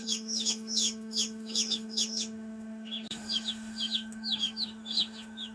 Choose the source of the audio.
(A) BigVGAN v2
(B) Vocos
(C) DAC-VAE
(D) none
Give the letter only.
C